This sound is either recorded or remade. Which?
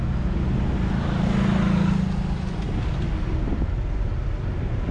recorded